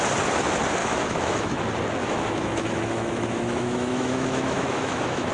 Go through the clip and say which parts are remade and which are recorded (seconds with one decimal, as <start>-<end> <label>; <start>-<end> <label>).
0.0-0.8 recorded; 0.8-1.6 remade; 1.6-2.0 recorded; 2.0-5.3 remade